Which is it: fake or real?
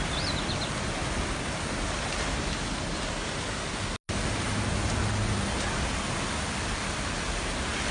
real